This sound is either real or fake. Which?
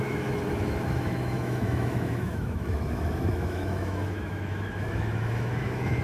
fake